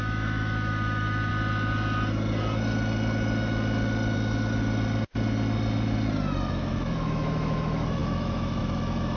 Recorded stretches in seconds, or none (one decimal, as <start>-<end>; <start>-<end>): 1.3-6.5